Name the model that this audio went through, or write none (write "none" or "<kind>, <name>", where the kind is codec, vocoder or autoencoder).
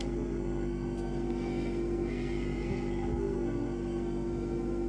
codec, SNAC